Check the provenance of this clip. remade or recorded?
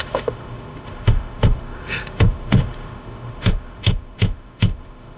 remade